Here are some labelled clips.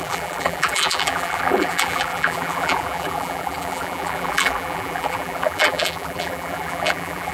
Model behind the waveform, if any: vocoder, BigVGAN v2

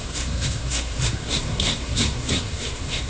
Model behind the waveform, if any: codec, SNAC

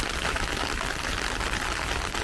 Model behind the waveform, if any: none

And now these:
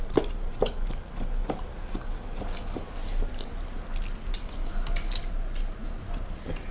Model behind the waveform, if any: none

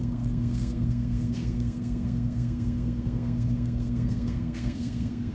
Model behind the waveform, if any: codec, SNAC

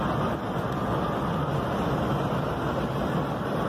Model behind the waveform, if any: none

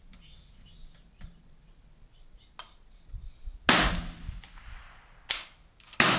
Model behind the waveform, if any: none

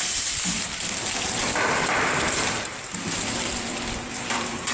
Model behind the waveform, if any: none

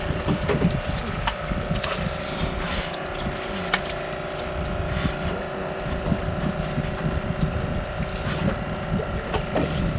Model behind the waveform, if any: none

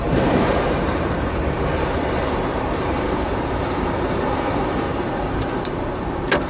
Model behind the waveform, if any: vocoder, BigVGAN v2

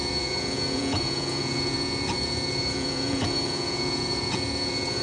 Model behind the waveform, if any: vocoder, Vocos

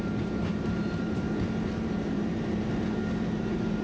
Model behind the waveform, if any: vocoder, BigVGAN v2